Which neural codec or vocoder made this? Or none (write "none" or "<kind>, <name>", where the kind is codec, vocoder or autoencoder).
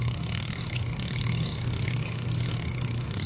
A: codec, SNAC